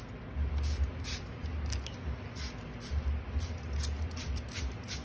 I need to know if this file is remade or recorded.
recorded